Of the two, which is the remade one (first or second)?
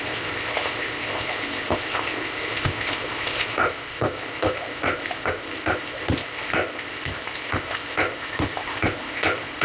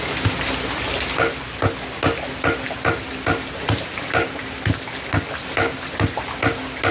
first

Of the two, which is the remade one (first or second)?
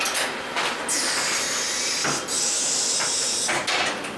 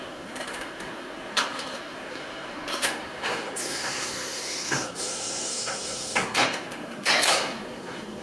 second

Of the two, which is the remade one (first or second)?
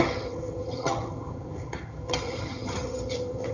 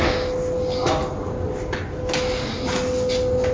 first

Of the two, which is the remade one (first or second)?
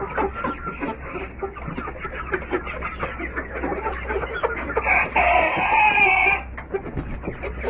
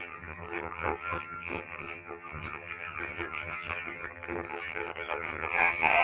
second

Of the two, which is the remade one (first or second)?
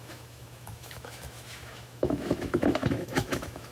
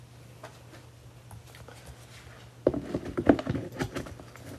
first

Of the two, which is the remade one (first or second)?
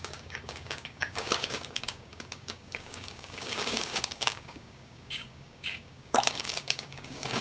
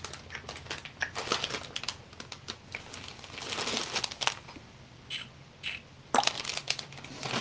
first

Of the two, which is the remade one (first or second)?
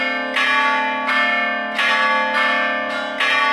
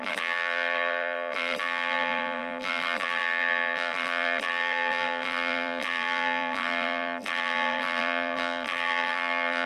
second